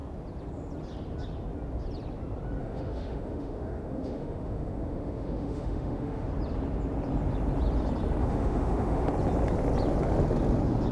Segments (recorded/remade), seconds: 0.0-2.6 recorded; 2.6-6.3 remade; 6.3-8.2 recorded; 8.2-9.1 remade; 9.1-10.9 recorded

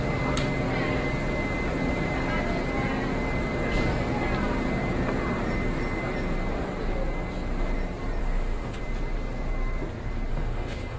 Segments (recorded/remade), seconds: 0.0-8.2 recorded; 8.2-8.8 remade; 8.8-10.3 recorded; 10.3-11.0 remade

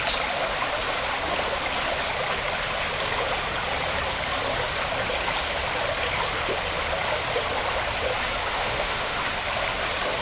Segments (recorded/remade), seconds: 0.0-8.5 recorded; 8.5-9.3 remade; 9.3-10.2 recorded